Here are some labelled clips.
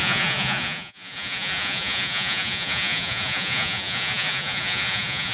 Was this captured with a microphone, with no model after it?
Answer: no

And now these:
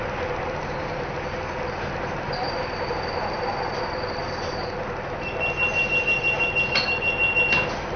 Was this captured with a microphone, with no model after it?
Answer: yes